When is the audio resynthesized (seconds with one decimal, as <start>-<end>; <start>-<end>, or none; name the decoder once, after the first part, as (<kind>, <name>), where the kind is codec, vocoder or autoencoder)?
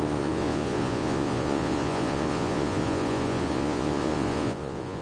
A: 0.0-5.0 (vocoder, Vocos)